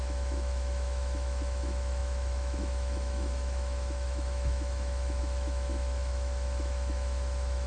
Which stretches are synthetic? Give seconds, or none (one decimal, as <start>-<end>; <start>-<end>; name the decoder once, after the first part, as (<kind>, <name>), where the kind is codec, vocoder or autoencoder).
0.0-7.7 (autoencoder, DAC-VAE)